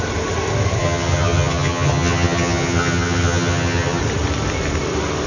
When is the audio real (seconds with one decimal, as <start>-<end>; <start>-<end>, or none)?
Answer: 0.0-0.8; 4.0-5.3